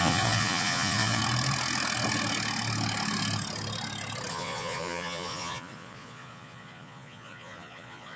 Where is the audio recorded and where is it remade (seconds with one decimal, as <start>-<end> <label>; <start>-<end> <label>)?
0.0-1.2 remade; 1.2-4.3 recorded; 4.3-8.2 remade